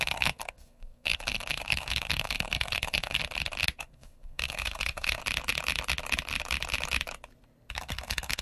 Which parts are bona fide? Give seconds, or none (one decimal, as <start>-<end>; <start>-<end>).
3.2-3.8; 5.2-7.7